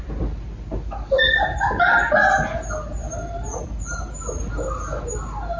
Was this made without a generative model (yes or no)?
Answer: yes